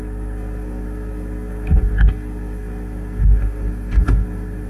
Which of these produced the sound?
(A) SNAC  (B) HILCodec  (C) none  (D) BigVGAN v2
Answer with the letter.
A